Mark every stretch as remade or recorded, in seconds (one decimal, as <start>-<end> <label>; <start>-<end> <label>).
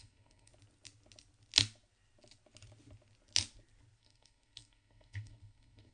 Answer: 0.0-0.5 remade; 0.5-4.0 recorded; 4.0-5.9 remade